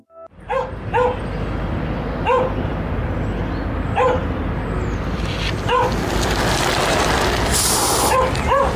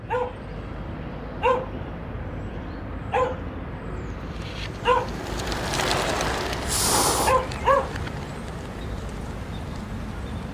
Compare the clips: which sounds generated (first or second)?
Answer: second